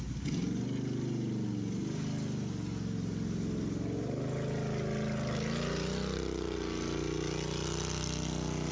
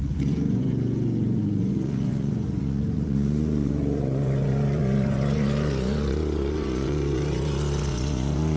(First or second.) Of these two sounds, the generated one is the second